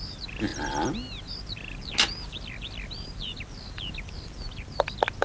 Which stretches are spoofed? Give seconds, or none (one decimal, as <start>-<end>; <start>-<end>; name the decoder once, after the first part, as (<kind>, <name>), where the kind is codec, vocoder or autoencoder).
none